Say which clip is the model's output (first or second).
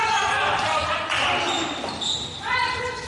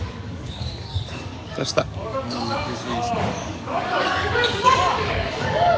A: second